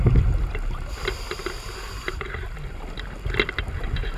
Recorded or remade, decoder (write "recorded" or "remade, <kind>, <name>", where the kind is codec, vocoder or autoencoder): recorded